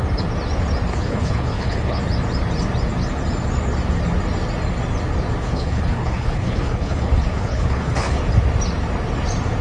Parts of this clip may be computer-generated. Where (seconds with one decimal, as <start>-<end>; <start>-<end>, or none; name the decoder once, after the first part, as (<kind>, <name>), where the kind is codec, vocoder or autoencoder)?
0.9-2.0 (codec, HILCodec); 5.4-8.2